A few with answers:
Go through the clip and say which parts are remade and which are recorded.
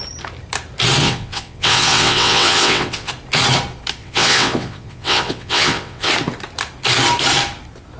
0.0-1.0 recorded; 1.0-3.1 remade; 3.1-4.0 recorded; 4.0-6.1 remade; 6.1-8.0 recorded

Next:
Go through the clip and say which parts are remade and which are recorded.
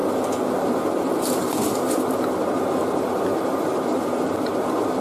0.0-5.0 recorded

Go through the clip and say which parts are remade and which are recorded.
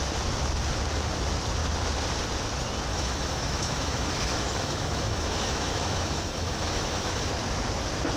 0.0-2.9 recorded; 2.9-7.3 remade; 7.3-8.2 recorded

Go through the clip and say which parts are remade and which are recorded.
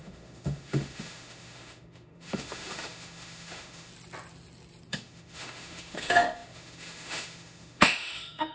0.0-3.9 remade; 3.9-4.9 recorded; 4.9-8.5 remade